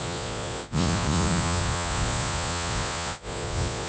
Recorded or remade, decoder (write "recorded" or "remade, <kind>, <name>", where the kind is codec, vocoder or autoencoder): remade, vocoder, Vocos